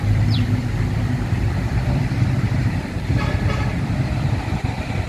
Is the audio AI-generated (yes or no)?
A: yes